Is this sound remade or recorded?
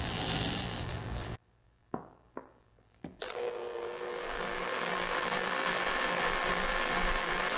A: remade